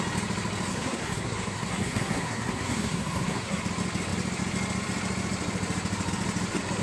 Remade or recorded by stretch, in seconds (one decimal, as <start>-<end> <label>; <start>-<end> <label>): 0.0-0.7 recorded; 0.7-3.6 remade; 3.6-6.8 recorded